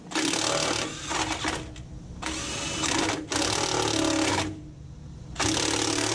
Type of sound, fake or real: real